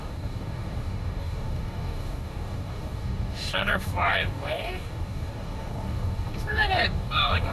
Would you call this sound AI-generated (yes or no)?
yes